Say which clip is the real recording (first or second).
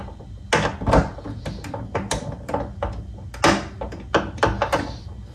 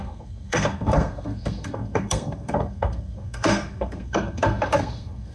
first